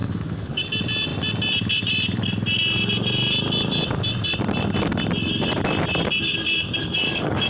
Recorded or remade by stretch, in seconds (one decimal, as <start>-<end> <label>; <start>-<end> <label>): 0.0-0.6 remade; 0.6-6.8 recorded; 6.8-7.5 remade